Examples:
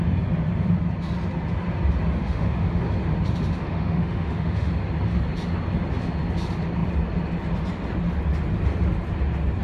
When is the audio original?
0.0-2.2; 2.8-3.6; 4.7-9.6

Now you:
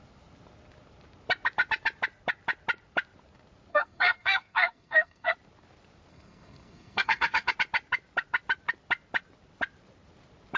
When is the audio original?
0.0-3.7; 5.3-6.1; 7.5-10.6

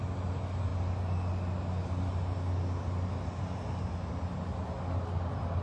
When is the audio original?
0.0-5.6

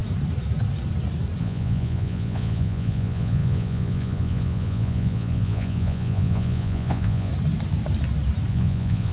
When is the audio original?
0.0-1.4; 7.3-8.5

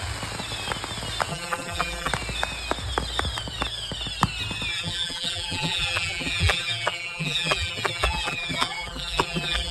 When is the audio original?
0.0-1.3; 2.1-4.7

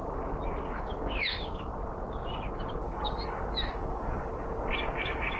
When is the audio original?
0.0-0.6; 1.7-3.7; 4.3-5.0

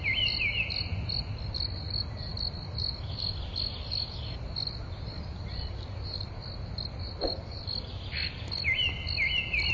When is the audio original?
0.0-9.7

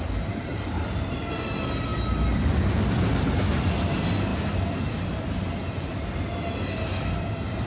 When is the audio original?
0.0-7.7